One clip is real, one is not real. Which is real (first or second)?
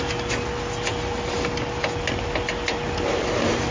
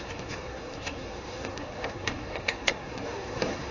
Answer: first